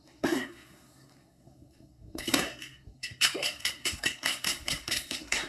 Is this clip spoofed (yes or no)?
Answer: yes